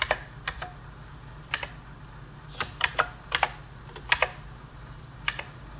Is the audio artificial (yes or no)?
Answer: no